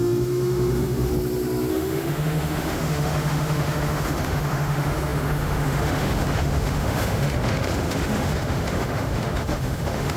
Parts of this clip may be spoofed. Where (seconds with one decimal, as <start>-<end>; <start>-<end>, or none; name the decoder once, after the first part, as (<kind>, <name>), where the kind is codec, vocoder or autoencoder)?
0.0-1.1 (autoencoder, DAC-VAE); 1.7-10.2